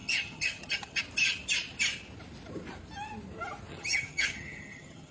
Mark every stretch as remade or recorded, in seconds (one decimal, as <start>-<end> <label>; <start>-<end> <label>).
0.0-1.0 remade; 1.0-3.7 recorded; 3.7-5.1 remade